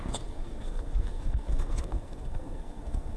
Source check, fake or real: fake